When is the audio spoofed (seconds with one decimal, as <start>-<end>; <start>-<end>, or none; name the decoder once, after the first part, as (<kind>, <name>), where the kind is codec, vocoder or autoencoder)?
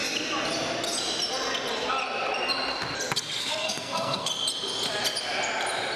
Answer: 3.4-4.3 (codec, SNAC)